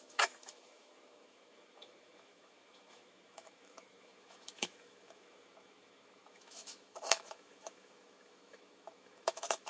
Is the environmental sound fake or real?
fake